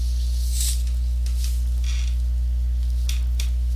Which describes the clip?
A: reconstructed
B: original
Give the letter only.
B